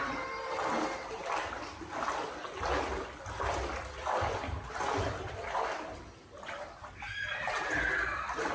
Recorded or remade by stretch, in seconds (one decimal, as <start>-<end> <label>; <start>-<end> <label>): 0.0-8.5 recorded